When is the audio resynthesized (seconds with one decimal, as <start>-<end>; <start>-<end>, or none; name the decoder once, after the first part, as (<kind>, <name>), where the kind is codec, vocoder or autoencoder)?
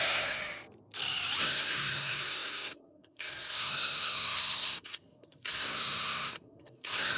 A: 0.0-0.4 (codec, SNAC); 1.4-7.2